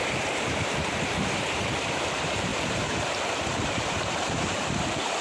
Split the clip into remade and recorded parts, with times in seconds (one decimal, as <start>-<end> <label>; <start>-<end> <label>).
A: 0.0-5.2 remade